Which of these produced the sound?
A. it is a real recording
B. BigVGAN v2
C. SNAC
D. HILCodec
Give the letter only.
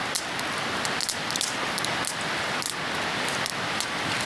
A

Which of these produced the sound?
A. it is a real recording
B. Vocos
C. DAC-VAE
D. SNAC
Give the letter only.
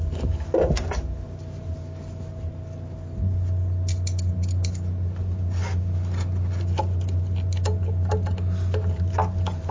A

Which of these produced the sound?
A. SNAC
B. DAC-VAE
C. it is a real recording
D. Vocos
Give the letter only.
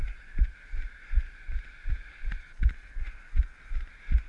C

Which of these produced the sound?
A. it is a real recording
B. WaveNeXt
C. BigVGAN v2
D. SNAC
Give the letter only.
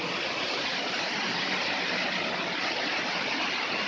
A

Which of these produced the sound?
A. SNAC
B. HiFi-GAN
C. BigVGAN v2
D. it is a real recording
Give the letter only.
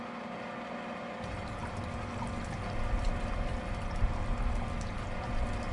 D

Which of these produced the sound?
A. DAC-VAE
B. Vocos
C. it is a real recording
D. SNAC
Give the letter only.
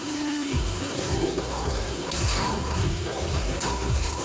D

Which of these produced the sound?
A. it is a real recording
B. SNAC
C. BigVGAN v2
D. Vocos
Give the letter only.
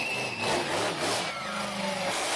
A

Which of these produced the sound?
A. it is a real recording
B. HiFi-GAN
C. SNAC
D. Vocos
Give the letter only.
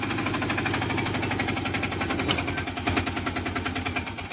A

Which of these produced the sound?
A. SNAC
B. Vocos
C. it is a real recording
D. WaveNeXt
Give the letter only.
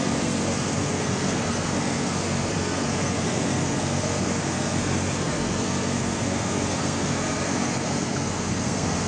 A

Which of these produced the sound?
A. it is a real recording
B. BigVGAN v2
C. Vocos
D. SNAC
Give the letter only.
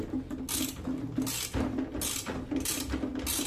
A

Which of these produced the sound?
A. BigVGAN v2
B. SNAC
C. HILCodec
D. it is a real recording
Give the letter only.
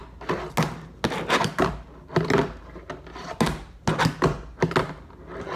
D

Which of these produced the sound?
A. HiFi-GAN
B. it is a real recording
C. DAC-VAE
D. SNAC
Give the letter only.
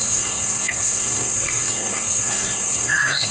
D